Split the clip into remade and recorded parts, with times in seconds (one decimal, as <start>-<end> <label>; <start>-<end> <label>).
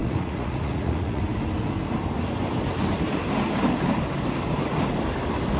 0.0-1.2 remade; 1.2-5.6 recorded